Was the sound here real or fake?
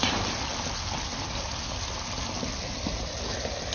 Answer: real